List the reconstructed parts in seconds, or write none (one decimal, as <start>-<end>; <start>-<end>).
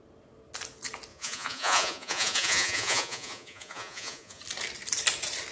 1.1-4.4